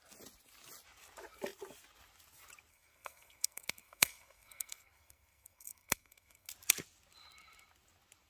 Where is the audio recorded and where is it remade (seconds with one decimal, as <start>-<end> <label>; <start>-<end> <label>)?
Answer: 0.0-2.7 recorded; 2.7-6.5 remade; 6.5-8.3 recorded